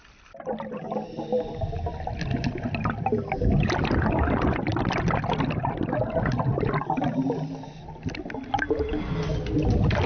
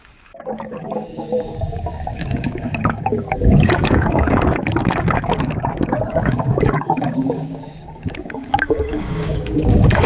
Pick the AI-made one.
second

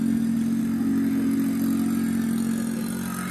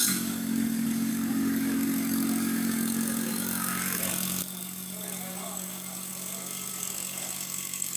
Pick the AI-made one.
second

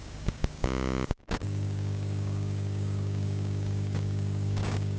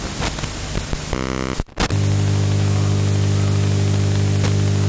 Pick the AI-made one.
first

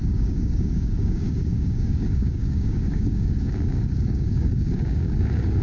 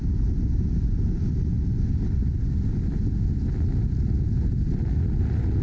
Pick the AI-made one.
first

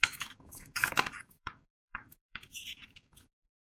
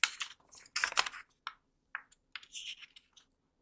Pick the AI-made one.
first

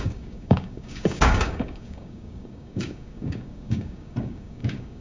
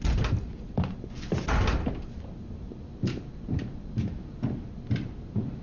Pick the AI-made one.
first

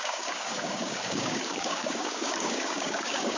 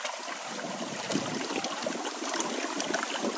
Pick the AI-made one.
first